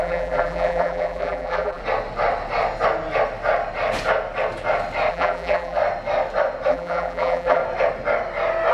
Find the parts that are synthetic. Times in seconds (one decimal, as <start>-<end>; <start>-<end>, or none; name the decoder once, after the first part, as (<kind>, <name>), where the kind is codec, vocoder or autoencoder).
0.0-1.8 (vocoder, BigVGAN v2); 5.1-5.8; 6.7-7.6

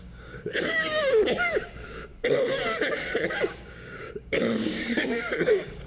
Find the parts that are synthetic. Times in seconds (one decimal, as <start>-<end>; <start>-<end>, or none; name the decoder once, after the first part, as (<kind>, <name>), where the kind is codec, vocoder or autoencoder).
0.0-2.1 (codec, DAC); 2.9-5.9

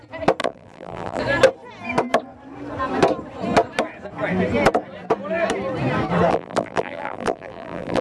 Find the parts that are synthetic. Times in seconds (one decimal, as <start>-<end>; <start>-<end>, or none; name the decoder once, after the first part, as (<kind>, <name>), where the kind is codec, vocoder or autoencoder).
0.4-1.2 (vocoder, BigVGAN v2); 6.3-8.0

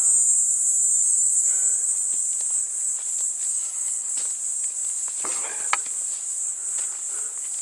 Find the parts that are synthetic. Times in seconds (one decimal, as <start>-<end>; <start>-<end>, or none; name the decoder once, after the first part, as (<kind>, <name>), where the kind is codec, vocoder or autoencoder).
1.0-1.5 (codec, DAC); 3.5-4.1

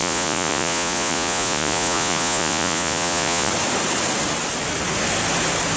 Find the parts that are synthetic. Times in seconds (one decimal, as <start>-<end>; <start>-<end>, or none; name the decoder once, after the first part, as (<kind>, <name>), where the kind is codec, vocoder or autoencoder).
0.0-3.5 (vocoder, Vocos)